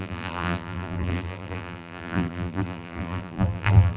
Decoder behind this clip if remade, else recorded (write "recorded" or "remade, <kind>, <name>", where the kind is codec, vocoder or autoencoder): remade, vocoder, BigVGAN v2